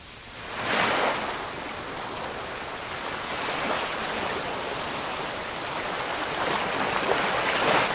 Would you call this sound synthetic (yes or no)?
no